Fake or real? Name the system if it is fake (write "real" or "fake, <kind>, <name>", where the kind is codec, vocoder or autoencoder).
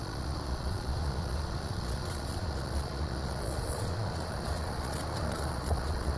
fake, vocoder, Vocos